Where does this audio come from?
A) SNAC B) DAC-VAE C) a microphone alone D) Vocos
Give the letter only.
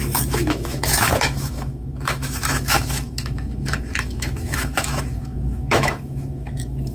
B